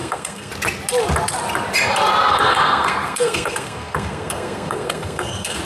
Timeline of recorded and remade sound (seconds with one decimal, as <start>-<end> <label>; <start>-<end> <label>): 0.0-0.5 remade; 0.5-2.3 recorded; 2.3-5.6 remade